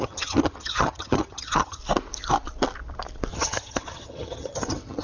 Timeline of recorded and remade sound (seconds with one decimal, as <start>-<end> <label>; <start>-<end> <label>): 0.0-1.8 remade; 1.8-3.3 recorded; 3.3-5.0 remade